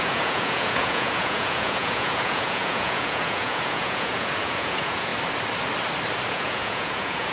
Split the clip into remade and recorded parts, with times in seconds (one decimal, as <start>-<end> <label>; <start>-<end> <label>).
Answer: 0.0-5.1 remade; 5.1-6.3 recorded; 6.3-7.3 remade